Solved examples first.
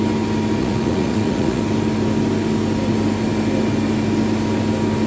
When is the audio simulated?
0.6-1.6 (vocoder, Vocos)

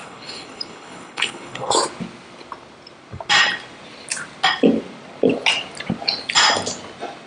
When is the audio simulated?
0.0-1.7 (codec, HILCodec)

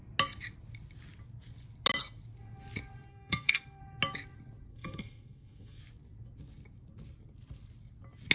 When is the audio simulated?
3.1-3.8 (codec, SNAC); 4.7-5.8

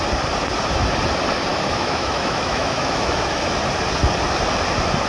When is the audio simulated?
1.5-3.5 (autoencoder, DAC-VAE)

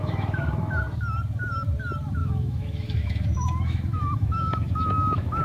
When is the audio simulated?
0.0-0.8 (autoencoder, DAC-VAE); 2.2-5.4

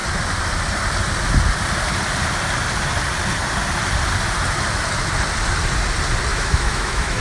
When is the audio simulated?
6.3-7.2 (autoencoder, DAC-VAE)

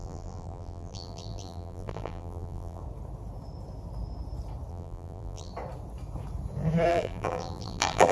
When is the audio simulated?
0.0-2.8 (vocoder, BigVGAN v2); 4.7-5.5; 6.9-8.1